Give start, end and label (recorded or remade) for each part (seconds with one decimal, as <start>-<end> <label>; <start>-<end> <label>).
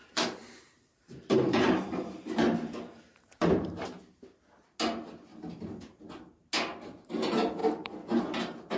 0.0-4.0 remade; 4.0-5.3 recorded; 5.3-5.8 remade; 5.8-7.6 recorded; 7.6-8.2 remade; 8.2-8.8 recorded